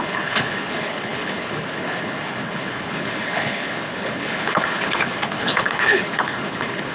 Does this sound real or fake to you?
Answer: fake